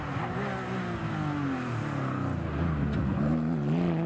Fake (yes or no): no